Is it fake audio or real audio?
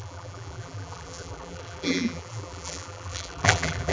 fake